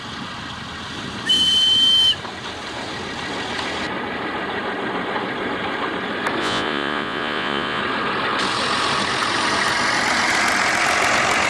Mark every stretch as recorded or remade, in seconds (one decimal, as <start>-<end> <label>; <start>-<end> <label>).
0.0-6.4 recorded; 6.4-7.8 remade; 7.8-11.5 recorded

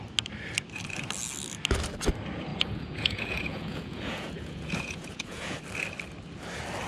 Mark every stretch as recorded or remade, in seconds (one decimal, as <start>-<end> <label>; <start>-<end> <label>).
0.0-2.5 recorded; 2.5-5.6 remade; 5.6-6.9 recorded

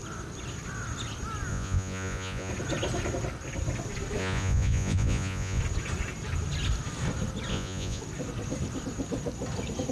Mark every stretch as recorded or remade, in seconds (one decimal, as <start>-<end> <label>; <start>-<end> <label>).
0.0-1.5 recorded; 1.5-2.5 remade; 2.5-4.2 recorded; 4.2-5.6 remade; 5.6-7.5 recorded; 7.5-8.0 remade; 8.0-9.9 recorded

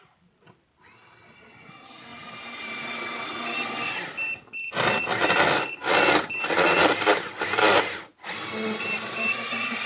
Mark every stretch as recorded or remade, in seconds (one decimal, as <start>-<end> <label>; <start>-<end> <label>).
0.0-9.9 recorded